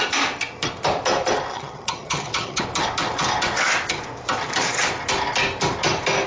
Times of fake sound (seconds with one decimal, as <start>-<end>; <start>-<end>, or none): 1.5-2.6